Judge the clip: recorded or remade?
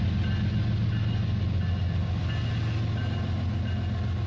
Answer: recorded